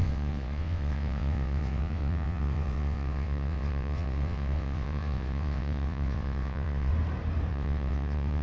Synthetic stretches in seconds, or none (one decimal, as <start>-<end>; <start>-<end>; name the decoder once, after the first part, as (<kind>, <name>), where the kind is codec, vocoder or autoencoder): 0.0-6.9 (vocoder, WaveNeXt); 7.5-8.4